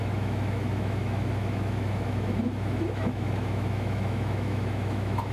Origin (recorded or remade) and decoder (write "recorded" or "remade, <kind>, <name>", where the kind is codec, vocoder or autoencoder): remade, autoencoder, DAC-VAE